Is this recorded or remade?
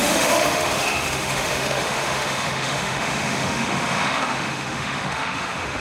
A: remade